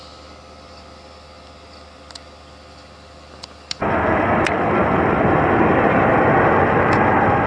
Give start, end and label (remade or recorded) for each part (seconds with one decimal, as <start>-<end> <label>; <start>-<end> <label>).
0.0-7.5 recorded